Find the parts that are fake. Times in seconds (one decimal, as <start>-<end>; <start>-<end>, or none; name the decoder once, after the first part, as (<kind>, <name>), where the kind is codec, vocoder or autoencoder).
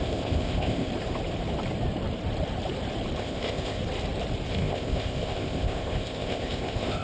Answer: 0.0-0.9 (codec, ZipCodec); 3.2-3.8; 4.5-7.0